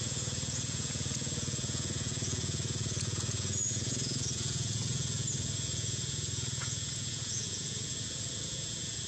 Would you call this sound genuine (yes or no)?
no